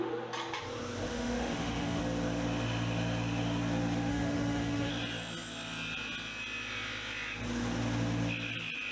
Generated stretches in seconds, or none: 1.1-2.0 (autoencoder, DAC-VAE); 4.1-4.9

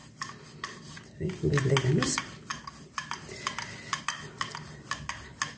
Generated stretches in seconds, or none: none

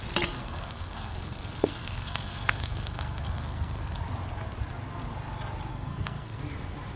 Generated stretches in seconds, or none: 0.4-4.0 (codec, SNAC); 5.7-6.4